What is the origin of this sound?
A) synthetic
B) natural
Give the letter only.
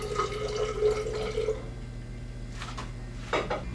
B